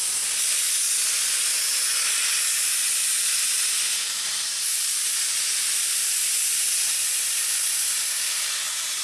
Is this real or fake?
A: real